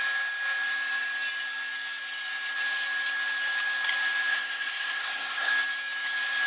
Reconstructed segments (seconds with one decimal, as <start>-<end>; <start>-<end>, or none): 4.3-5.5